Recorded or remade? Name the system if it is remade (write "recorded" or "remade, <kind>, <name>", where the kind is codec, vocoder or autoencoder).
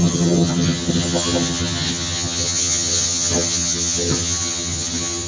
remade, vocoder, HiFi-GAN